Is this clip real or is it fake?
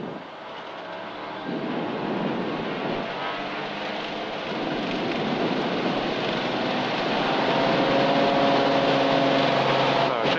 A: real